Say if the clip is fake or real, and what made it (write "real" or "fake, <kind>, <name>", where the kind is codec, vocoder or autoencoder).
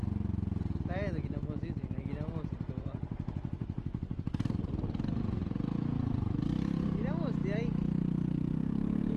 real